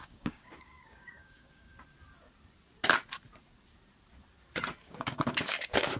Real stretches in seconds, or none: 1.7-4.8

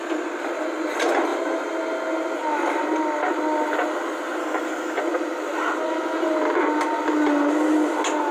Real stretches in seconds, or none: 0.0-4.4; 5.0-8.3

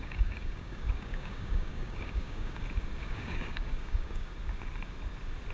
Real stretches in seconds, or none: 2.6-3.0; 4.3-5.5

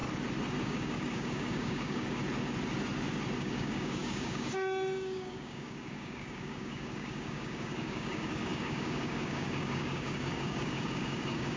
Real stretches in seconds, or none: 0.0-0.6; 2.2-3.4

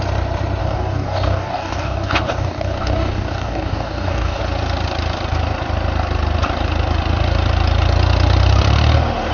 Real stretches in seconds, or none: 0.0-0.6; 4.4-9.3

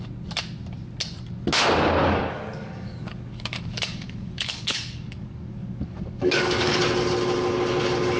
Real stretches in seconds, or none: 0.0-2.0; 6.8-8.2